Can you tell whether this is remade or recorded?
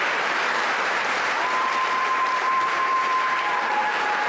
remade